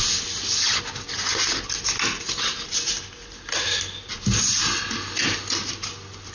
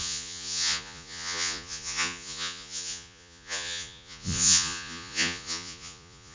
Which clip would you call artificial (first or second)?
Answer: second